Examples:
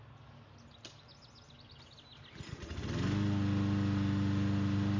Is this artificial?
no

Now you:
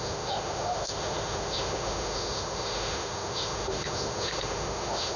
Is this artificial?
yes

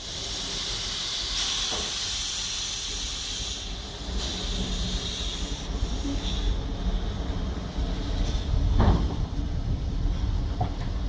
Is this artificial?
no